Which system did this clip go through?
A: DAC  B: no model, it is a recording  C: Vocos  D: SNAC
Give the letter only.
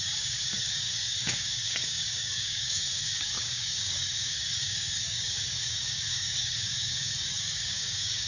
A